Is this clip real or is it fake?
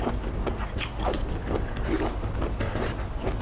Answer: fake